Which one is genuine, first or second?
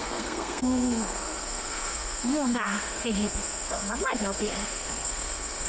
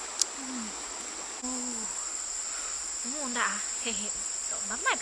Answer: second